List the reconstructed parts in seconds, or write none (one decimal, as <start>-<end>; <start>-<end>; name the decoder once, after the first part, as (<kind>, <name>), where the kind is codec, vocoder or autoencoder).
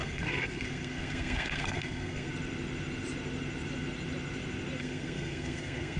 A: 0.0-2.3 (codec, SNAC); 4.8-6.0